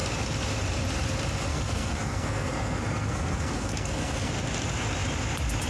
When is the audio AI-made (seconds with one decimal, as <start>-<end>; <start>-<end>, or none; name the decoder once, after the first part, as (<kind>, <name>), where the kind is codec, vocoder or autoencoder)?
1.5-4.3 (codec, SNAC)